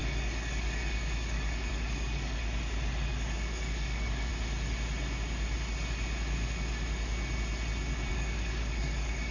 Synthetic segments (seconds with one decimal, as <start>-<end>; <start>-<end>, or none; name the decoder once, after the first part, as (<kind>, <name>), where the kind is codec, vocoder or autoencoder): 0.0-2.4 (codec, DAC); 3.0-4.3; 8.1-9.3